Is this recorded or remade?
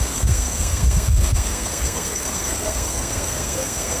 remade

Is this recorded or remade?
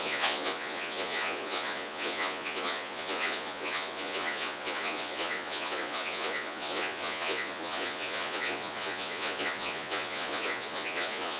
remade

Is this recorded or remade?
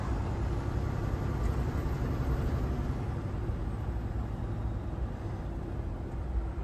recorded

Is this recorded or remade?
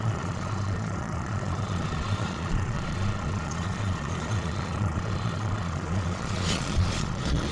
remade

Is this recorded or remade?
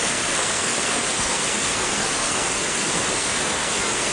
remade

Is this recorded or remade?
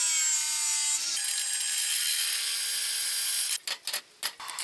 recorded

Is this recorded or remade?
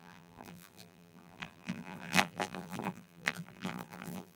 remade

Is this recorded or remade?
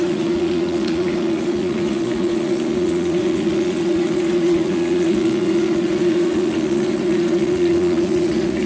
remade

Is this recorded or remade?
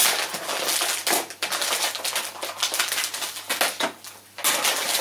recorded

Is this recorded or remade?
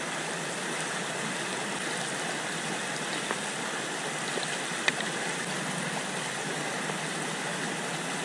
recorded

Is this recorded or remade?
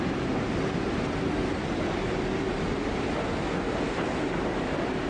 recorded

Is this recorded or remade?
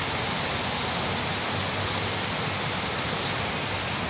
recorded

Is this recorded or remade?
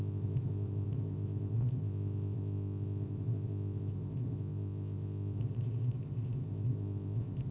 remade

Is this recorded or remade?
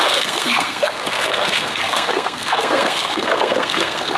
remade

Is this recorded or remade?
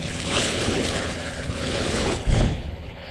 remade